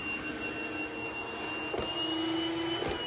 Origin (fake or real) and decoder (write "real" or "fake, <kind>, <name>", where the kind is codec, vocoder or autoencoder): real